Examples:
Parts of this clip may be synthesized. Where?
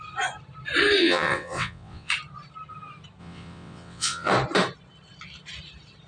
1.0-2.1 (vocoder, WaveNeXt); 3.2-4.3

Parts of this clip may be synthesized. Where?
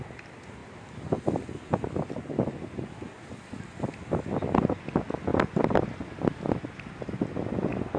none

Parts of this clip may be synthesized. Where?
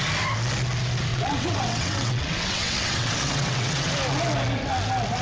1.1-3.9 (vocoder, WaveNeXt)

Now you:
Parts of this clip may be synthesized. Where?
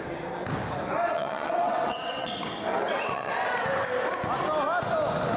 1.1-2.3 (vocoder, WaveNeXt); 2.7-3.3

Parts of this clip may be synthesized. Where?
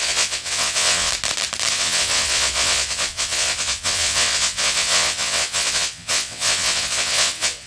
0.0-1.1 (vocoder, WaveNeXt); 1.7-7.7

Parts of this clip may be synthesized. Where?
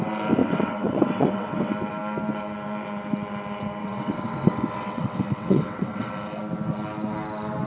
0.4-1.7 (vocoder, WaveNeXt); 3.8-6.1